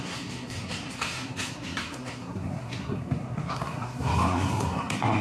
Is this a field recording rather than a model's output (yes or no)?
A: no